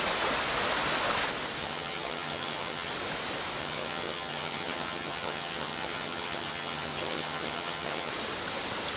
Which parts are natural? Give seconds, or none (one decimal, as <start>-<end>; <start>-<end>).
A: 0.0-1.6; 2.9-3.6; 8.1-9.0